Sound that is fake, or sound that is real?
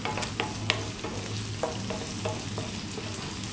real